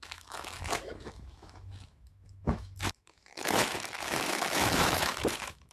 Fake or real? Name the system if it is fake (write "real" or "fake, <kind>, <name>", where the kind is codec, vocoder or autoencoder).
fake, autoencoder, DAC-VAE